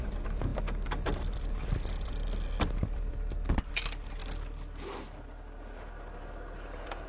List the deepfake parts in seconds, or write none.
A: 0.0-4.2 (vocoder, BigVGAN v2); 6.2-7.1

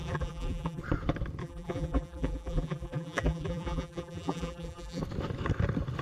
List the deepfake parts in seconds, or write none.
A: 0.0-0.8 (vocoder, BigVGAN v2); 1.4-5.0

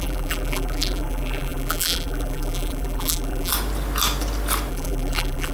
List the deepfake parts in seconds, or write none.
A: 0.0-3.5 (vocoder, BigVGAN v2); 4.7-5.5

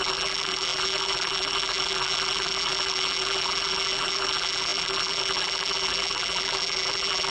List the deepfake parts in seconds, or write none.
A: 0.0-7.3 (vocoder, BigVGAN v2)

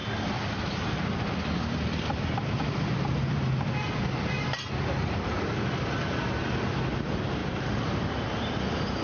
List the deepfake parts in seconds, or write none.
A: 0.0-3.3 (vocoder, BigVGAN v2); 7.4-8.1